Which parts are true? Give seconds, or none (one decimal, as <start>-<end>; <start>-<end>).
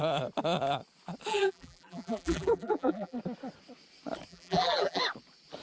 0.0-1.3; 3.2-4.3; 5.0-5.6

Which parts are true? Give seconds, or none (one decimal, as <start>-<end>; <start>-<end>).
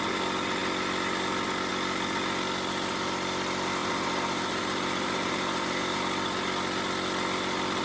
0.0-3.8; 6.0-7.8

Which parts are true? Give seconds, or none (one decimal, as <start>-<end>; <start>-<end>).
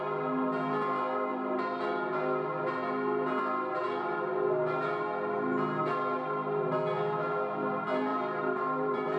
0.0-8.1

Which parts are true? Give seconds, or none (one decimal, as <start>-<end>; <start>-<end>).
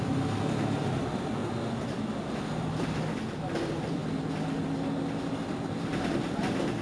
1.4-2.6; 4.0-6.8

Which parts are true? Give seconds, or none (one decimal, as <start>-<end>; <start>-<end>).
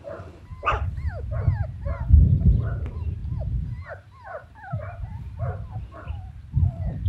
0.5-2.8; 3.2-3.9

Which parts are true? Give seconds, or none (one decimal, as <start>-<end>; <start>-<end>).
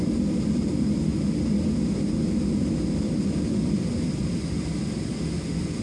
0.0-5.8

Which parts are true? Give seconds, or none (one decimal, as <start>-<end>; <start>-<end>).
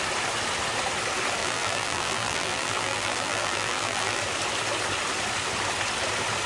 0.0-1.4; 4.2-6.5